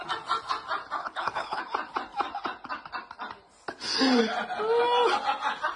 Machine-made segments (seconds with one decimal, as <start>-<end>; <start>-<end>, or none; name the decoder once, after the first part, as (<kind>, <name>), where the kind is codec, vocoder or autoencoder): 1.0-1.6 (codec, HILCodec)